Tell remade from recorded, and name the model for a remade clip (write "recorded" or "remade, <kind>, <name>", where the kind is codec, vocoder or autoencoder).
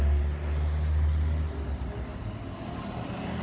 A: recorded